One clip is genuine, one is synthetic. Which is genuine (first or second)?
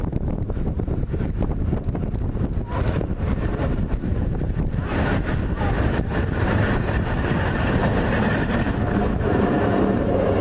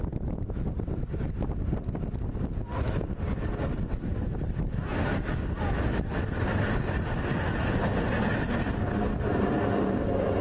second